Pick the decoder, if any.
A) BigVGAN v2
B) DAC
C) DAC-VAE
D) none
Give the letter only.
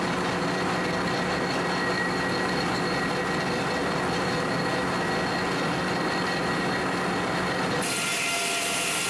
D